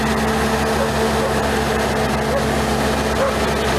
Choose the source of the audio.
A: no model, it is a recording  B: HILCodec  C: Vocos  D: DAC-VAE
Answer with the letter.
A